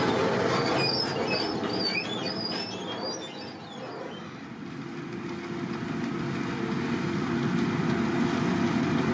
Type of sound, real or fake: real